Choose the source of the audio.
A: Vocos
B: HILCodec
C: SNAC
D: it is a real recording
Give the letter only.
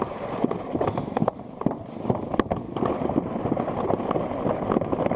D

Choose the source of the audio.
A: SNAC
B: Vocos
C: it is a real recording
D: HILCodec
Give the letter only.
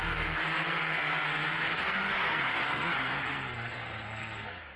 A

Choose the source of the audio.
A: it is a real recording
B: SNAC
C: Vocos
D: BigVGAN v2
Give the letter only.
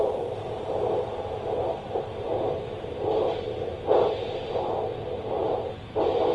A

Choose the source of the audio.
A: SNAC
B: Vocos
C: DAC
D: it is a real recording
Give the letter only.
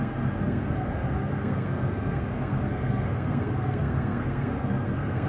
A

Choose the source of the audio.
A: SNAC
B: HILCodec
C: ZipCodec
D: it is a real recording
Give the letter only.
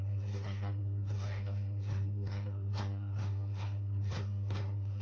A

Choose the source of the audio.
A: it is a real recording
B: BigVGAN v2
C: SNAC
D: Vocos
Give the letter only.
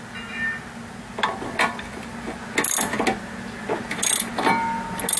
A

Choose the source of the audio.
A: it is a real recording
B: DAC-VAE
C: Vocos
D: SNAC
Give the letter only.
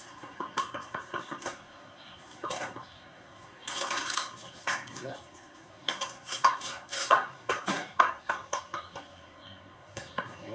D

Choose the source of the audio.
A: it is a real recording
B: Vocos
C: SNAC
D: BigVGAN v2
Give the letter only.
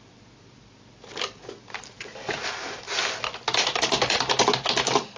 A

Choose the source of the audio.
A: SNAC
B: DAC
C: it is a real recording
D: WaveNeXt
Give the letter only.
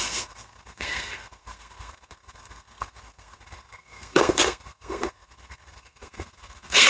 A